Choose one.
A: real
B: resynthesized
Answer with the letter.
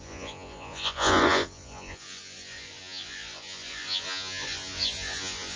B